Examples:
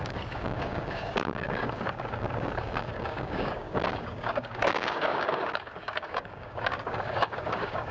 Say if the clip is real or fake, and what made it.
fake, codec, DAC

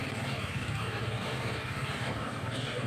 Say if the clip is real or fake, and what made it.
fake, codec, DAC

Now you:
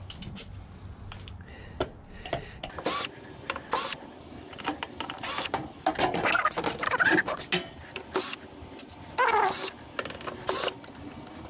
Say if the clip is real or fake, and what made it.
real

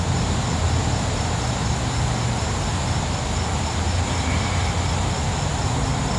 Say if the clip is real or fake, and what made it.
real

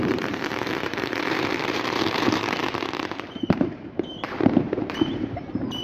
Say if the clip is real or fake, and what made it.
fake, vocoder, BigVGAN v2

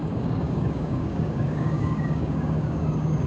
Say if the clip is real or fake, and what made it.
fake, codec, DAC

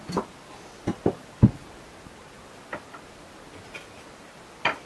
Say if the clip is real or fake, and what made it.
real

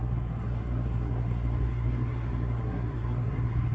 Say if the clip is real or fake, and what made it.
fake, codec, SNAC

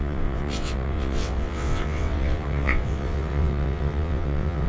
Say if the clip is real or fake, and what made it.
fake, vocoder, WaveNeXt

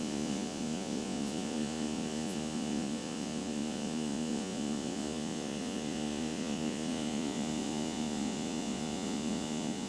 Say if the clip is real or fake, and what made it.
fake, vocoder, Vocos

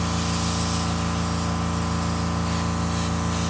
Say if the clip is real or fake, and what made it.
real